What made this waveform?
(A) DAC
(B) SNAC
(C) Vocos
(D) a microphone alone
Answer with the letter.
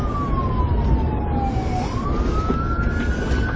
D